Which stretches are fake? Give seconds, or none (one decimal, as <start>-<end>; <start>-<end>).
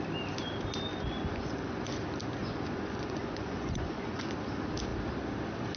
0.9-2.0; 2.4-4.3